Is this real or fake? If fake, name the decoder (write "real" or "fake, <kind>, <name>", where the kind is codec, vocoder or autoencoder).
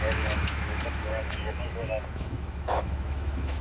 fake, autoencoder, DAC-VAE